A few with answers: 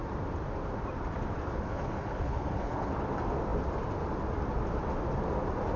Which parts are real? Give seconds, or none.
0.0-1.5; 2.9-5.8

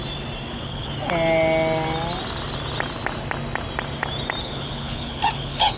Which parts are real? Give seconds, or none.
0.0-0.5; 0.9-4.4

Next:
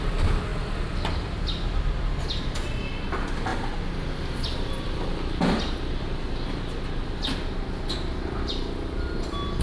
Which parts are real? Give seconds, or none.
0.0-9.6

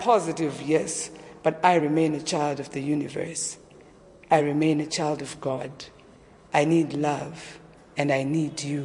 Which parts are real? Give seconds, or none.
0.0-3.3; 4.4-5.3; 6.5-8.8